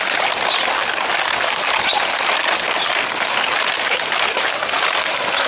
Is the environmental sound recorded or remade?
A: recorded